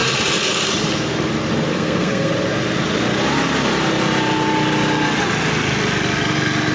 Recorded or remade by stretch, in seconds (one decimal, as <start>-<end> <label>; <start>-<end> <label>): 0.0-1.7 recorded; 1.7-2.3 remade; 2.3-6.7 recorded